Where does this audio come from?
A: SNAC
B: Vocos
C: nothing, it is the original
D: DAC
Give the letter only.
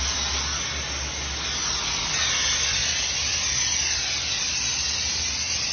C